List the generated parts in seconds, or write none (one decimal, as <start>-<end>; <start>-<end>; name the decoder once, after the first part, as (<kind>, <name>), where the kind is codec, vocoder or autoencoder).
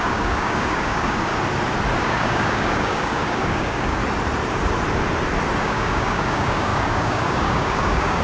0.0-1.3 (codec, DAC); 2.0-4.0; 5.6-8.2